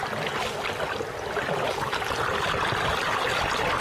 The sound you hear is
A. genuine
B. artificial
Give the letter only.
A